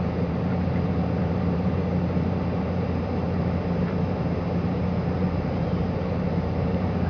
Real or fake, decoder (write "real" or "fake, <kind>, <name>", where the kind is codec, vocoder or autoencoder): fake, vocoder, BigVGAN v2